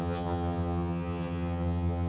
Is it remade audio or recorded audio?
remade